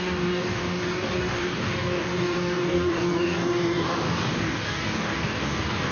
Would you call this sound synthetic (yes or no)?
yes